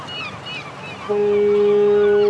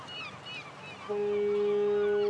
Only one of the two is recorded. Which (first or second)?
second